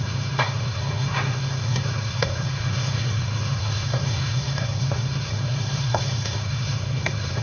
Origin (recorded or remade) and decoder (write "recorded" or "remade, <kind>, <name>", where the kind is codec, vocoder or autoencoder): remade, codec, SNAC